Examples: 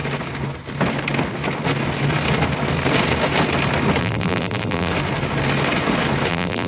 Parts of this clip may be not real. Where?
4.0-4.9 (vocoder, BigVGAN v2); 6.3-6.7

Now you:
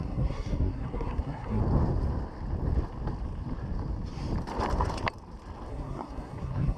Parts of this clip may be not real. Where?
0.0-1.6 (codec, SNAC); 5.7-6.8

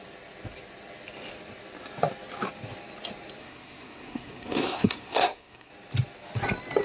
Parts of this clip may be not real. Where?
3.4-5.7 (codec, SNAC)

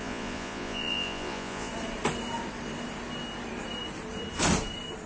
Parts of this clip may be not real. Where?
0.0-1.7 (vocoder, Vocos)